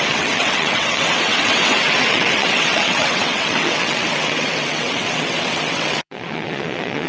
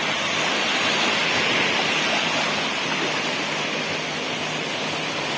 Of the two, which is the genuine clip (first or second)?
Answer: second